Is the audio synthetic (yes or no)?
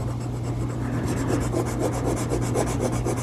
no